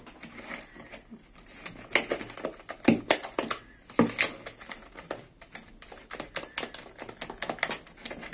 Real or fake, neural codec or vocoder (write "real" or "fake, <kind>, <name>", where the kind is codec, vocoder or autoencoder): real